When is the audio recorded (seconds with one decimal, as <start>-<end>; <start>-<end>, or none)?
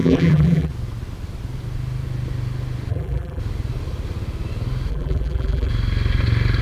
0.7-2.9; 3.4-4.9; 5.7-6.6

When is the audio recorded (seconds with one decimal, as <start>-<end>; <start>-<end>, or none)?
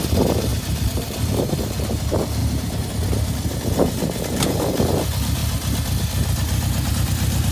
0.0-0.5; 1.5-2.4; 2.9-7.5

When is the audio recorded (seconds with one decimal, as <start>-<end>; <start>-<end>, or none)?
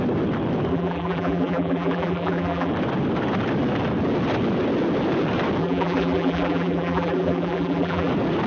0.0-0.7; 2.7-5.6; 8.1-8.5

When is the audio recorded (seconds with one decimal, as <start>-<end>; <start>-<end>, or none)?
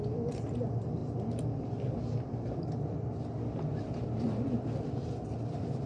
none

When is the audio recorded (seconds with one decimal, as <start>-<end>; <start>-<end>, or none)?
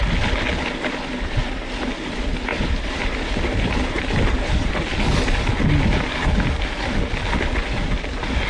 0.0-2.5; 4.7-8.5